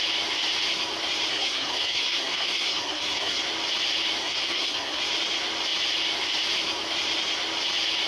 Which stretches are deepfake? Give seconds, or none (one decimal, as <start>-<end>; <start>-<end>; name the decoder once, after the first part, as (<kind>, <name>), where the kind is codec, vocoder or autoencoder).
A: 1.3-3.4 (codec, SNAC); 4.2-5.0